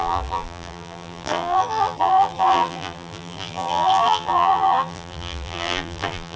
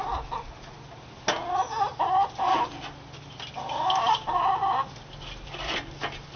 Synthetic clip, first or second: first